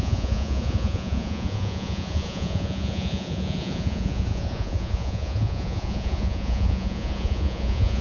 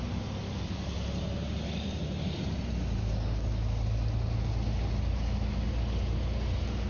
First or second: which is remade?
first